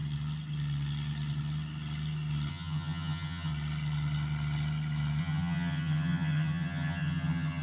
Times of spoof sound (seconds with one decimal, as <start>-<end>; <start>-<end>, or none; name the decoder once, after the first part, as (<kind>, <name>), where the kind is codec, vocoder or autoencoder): 2.5-3.5 (vocoder, HiFi-GAN); 5.2-7.6